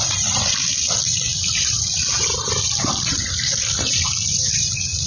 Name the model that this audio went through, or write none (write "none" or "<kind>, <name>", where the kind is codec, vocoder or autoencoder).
vocoder, BigVGAN v2